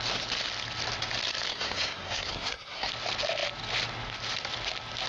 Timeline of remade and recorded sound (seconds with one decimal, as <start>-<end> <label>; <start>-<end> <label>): 0.0-1.5 recorded; 1.5-2.9 remade; 2.9-5.1 recorded